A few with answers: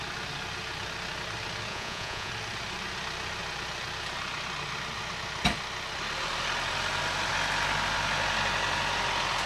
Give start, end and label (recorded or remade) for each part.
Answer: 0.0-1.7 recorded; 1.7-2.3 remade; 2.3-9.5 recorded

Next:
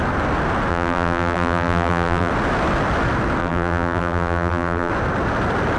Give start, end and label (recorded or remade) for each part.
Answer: 0.0-0.7 recorded; 0.7-2.3 remade; 2.3-3.4 recorded; 3.4-4.9 remade; 4.9-5.8 recorded

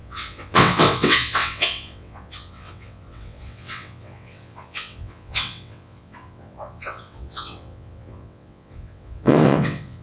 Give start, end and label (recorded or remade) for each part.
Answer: 0.0-10.0 remade

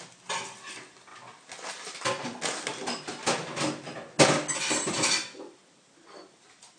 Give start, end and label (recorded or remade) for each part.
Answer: 0.0-6.8 recorded

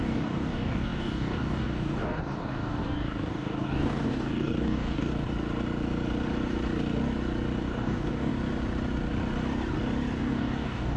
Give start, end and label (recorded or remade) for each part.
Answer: 0.0-5.1 remade; 5.1-7.6 recorded; 7.6-8.3 remade; 8.3-10.2 recorded; 10.2-11.0 remade

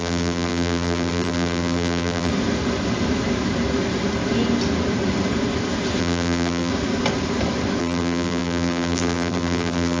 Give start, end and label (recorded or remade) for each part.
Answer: 0.0-2.3 remade; 2.3-6.0 recorded; 6.0-6.7 remade; 6.7-7.8 recorded; 7.8-10.0 remade

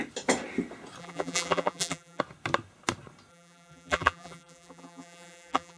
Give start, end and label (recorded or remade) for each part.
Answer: 0.0-1.0 recorded; 1.0-2.2 remade; 2.2-3.3 recorded; 3.3-5.8 remade